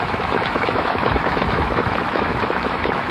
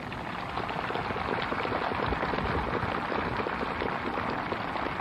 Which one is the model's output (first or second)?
first